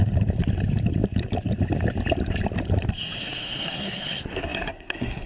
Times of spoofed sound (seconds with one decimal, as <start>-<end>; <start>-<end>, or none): 3.2-5.3